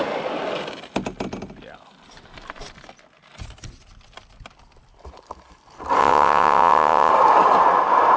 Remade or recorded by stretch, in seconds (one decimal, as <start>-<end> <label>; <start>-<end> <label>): 0.0-6.0 recorded; 6.0-7.1 remade; 7.1-8.2 recorded